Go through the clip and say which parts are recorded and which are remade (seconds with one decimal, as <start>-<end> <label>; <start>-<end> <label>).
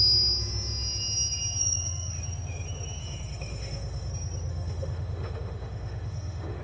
0.0-1.6 recorded; 1.6-2.2 remade; 2.2-3.0 recorded; 3.0-4.1 remade; 4.1-4.5 recorded; 4.5-6.6 remade